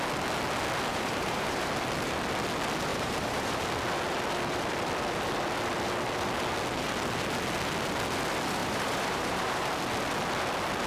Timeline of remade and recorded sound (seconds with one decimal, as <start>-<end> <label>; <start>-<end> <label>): 0.0-0.9 recorded; 0.9-1.7 remade; 1.7-2.9 recorded; 2.9-3.6 remade; 3.6-8.6 recorded; 8.6-9.7 remade; 9.7-10.9 recorded